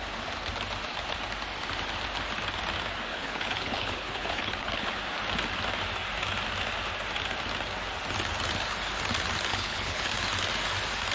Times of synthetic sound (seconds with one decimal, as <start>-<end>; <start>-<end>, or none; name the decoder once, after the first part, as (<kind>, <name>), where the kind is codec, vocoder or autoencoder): 3.1-4.9 (codec, HILCodec); 9.5-10.1